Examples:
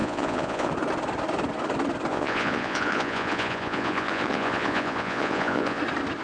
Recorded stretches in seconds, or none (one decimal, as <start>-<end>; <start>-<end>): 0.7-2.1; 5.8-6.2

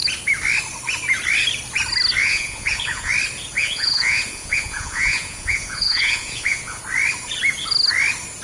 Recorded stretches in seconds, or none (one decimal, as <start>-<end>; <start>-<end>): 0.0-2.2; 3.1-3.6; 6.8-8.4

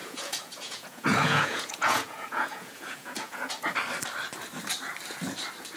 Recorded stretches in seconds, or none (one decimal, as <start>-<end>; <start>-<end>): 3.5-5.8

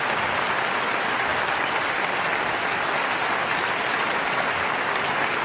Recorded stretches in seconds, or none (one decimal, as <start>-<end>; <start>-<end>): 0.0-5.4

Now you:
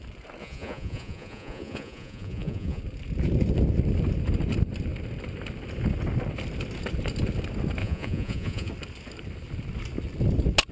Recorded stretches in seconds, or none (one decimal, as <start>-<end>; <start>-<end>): 0.0-0.4; 2.8-7.8; 8.7-10.7

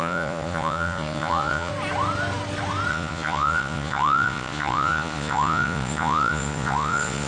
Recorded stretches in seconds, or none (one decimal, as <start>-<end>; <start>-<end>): 1.7-2.9

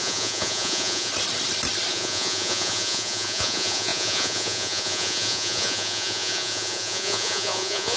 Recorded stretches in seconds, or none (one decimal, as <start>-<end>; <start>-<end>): 1.1-1.9